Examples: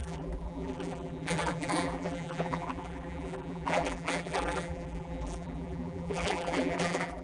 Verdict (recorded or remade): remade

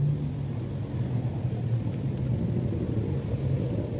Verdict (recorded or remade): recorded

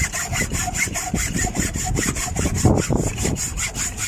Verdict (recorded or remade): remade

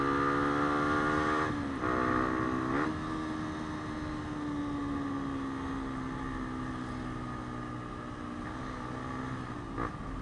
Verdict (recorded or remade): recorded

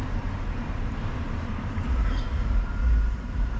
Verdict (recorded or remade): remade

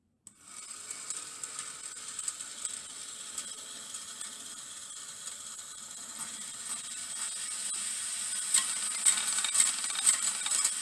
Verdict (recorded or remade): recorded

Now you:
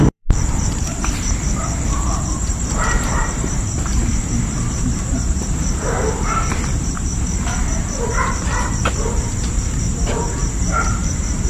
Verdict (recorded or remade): remade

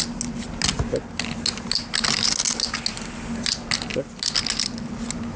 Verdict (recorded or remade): recorded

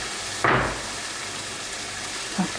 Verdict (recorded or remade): recorded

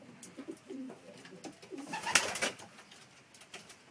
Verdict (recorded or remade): recorded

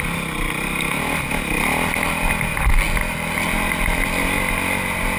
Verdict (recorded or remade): recorded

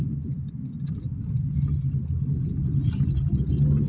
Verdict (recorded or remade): recorded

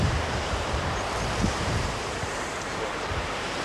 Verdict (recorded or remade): remade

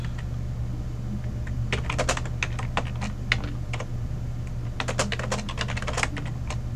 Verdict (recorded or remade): recorded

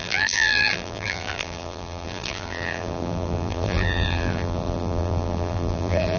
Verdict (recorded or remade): remade